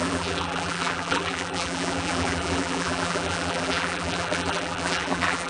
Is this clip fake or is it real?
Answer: fake